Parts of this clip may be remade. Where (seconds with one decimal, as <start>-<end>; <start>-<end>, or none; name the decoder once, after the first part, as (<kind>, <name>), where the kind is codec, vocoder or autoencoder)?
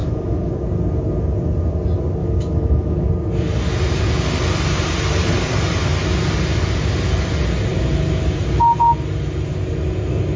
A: 0.0-0.5 (autoencoder, DAC-VAE); 2.2-3.1